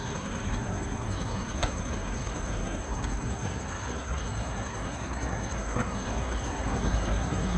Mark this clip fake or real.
fake